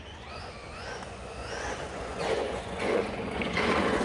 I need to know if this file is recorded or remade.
remade